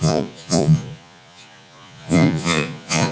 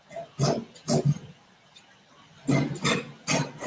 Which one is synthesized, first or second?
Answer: first